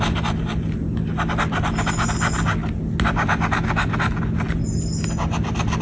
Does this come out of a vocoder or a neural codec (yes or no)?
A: no